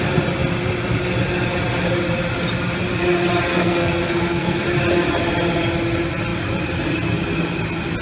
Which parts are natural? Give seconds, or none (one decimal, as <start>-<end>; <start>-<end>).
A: 0.0-3.5; 4.6-8.0